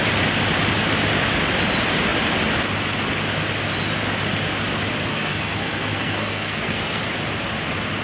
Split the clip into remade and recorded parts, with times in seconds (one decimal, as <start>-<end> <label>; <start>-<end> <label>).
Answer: 0.0-5.1 recorded; 5.1-7.0 remade; 7.0-8.0 recorded